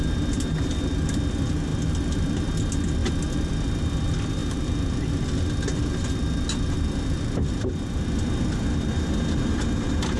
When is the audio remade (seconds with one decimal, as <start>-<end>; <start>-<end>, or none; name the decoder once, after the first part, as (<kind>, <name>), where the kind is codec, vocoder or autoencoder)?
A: none